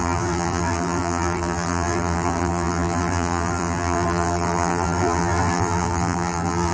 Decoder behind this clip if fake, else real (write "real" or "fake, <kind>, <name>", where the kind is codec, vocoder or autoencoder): fake, vocoder, BigVGAN v2